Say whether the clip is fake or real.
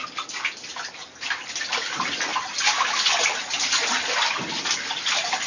real